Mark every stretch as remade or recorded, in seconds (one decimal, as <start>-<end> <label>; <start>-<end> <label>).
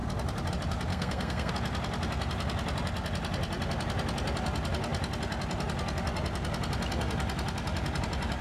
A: 0.0-0.9 recorded; 0.9-1.5 remade; 1.5-8.4 recorded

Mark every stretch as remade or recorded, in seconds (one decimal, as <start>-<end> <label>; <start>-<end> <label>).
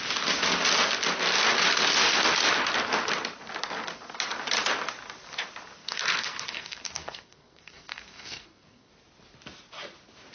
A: 0.0-5.8 recorded; 5.8-8.9 remade; 8.9-10.3 recorded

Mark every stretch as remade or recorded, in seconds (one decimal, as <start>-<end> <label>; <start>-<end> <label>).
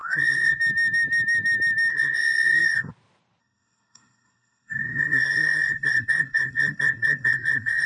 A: 0.0-0.6 remade; 0.6-1.9 recorded; 1.9-2.9 remade; 2.9-3.4 recorded; 3.4-7.9 remade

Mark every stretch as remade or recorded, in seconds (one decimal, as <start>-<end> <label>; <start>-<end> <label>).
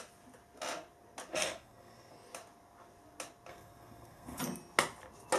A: 0.0-1.3 recorded; 1.3-2.1 remade; 2.1-3.5 recorded; 3.5-4.4 remade; 4.4-5.4 recorded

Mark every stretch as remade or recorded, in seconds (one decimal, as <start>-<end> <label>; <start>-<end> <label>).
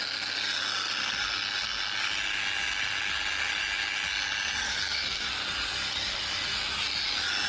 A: 0.0-4.7 recorded; 4.7-5.3 remade; 5.3-7.5 recorded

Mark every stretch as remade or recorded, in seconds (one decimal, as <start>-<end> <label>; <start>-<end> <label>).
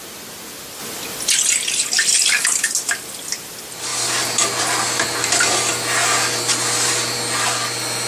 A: 0.0-8.1 recorded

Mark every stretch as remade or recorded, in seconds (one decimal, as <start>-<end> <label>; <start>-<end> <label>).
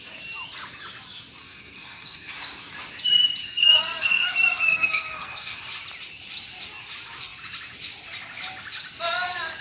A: 0.0-1.4 recorded; 1.4-2.3 remade; 2.3-3.4 recorded; 3.4-4.3 remade; 4.3-4.7 recorded; 4.7-5.6 remade; 5.6-9.6 recorded